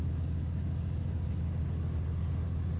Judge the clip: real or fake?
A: real